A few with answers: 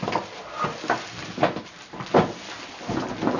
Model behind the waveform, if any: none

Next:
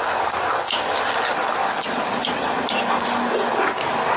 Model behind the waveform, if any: none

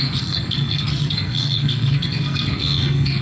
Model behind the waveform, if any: codec, SNAC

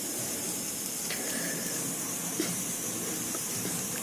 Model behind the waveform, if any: vocoder, BigVGAN v2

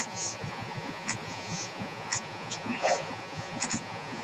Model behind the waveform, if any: vocoder, Vocos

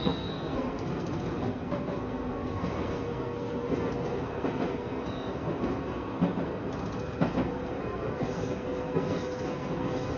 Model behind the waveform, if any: codec, SNAC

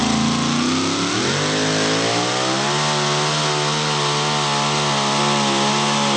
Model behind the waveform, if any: none